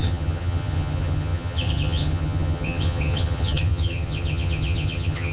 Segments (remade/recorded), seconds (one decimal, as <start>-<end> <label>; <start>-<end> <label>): 0.0-5.3 remade